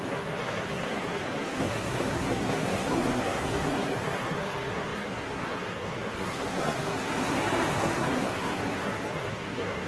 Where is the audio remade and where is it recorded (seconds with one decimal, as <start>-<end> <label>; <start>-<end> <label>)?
0.0-9.9 remade